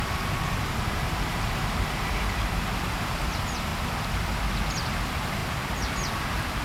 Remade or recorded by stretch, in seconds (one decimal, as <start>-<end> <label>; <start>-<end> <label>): 0.0-3.7 remade; 3.7-4.5 recorded; 4.5-6.6 remade